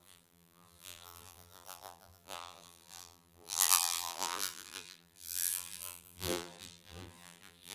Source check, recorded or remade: remade